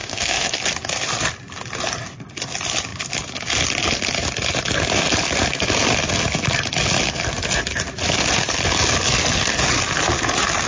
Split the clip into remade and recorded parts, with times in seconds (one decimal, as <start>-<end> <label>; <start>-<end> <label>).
0.0-0.5 remade; 0.5-10.7 recorded